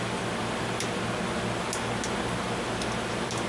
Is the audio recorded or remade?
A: recorded